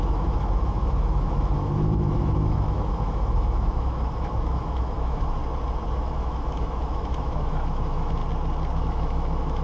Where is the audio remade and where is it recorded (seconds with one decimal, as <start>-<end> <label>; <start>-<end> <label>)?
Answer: 0.0-5.4 remade; 5.4-5.9 recorded; 5.9-8.2 remade; 8.2-8.8 recorded; 8.8-9.6 remade